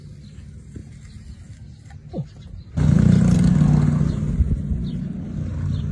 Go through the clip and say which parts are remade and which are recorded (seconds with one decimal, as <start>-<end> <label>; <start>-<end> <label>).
0.0-5.9 recorded